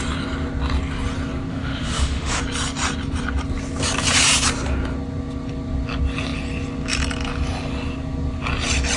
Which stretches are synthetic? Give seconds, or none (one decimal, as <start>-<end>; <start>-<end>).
1.5-2.4